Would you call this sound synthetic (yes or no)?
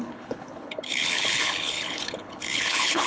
yes